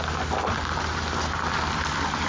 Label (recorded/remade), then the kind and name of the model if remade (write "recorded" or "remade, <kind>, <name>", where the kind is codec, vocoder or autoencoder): recorded